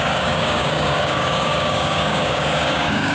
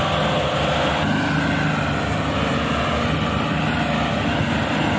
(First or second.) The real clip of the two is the second